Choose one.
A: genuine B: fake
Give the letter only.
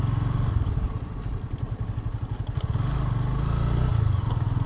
A